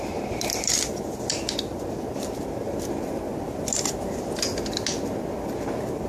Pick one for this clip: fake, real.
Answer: real